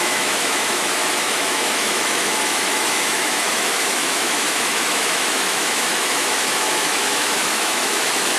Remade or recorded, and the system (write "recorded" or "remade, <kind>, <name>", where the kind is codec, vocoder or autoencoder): remade, autoencoder, DAC-VAE